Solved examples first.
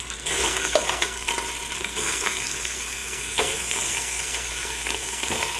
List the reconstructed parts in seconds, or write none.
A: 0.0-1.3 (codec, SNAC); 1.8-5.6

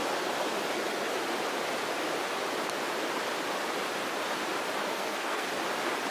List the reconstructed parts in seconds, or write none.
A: 4.8-5.5 (codec, SNAC)